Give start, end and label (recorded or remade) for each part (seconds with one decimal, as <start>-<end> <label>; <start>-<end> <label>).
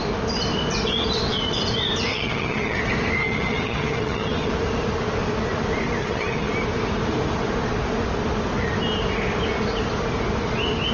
0.0-2.1 recorded; 2.1-2.8 remade; 2.8-3.2 recorded; 3.2-4.5 remade; 4.5-6.0 recorded; 6.0-6.5 remade; 6.5-10.9 recorded